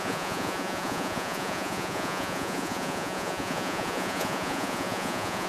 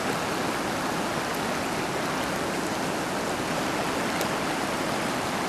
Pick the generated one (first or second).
first